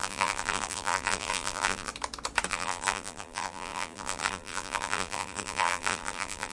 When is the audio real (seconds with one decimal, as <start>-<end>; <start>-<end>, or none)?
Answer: 1.9-2.5